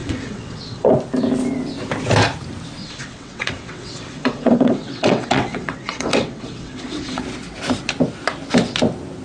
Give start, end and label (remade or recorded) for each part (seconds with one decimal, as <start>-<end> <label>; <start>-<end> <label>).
0.0-0.9 remade; 0.9-2.8 recorded; 2.8-7.2 remade; 7.2-9.2 recorded